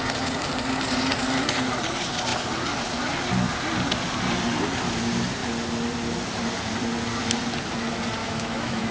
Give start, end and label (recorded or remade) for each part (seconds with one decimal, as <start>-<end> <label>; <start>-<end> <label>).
0.0-8.2 recorded; 8.2-8.9 remade